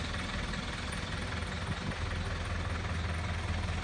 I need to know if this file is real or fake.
real